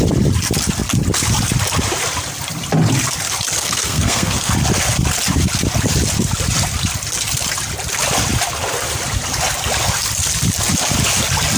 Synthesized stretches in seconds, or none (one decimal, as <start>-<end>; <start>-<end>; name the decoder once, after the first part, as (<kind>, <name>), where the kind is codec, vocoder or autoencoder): 3.6-4.5 (codec, SNAC)